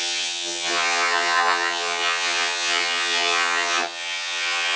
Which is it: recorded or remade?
remade